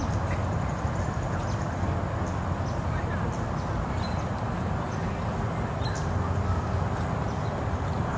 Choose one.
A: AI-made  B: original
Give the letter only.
B